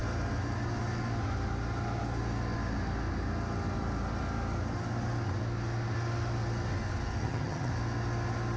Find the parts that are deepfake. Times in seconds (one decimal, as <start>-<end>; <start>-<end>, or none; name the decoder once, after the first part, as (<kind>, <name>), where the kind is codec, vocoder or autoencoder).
7.2-7.7 (vocoder, HiFi-GAN)